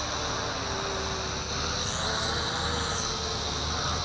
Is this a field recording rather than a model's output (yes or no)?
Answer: yes